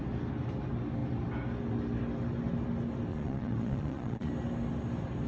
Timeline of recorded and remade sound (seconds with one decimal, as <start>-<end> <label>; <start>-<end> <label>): 0.0-3.1 recorded; 3.1-4.3 remade; 4.3-5.3 recorded